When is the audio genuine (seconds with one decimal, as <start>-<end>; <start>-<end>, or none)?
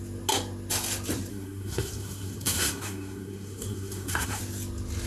0.0-1.3; 4.4-5.1